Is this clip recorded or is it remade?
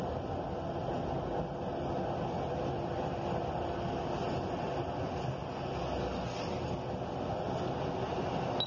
recorded